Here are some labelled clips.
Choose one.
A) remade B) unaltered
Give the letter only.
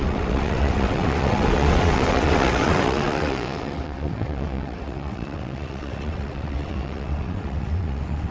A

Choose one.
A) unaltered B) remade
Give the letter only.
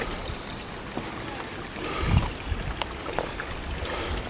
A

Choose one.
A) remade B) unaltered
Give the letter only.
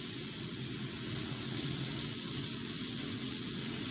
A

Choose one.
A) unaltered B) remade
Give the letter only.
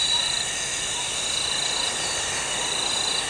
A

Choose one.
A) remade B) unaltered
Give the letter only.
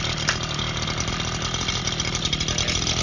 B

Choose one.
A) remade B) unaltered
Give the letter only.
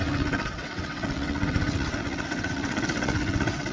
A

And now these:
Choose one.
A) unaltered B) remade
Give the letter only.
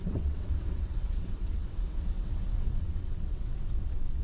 B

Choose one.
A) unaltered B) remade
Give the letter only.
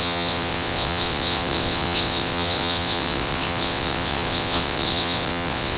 B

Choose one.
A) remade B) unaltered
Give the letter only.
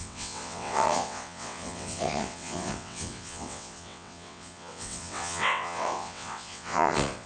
A